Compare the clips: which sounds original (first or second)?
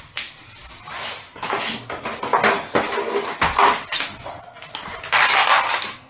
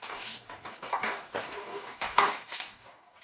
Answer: first